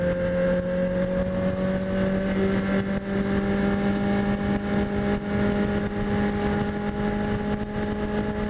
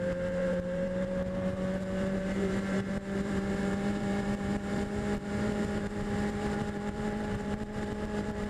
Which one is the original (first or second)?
first